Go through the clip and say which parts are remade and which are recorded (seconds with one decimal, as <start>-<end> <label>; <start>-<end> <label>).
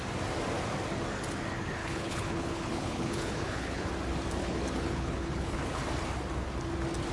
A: 0.0-1.8 recorded; 1.8-3.9 remade; 3.9-4.4 recorded; 4.4-5.8 remade; 5.8-7.1 recorded